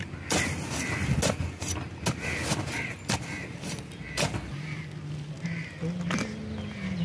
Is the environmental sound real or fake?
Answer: real